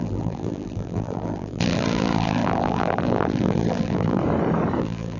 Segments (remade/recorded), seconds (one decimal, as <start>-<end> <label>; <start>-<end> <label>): 0.0-4.2 remade; 4.2-4.8 recorded; 4.8-5.2 remade

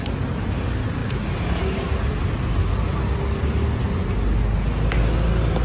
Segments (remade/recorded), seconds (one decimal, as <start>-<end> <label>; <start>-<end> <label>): 0.0-5.6 recorded

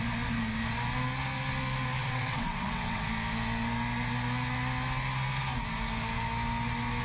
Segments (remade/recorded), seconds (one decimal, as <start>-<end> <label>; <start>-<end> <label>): 0.0-2.0 recorded; 2.0-3.0 remade; 3.0-7.0 recorded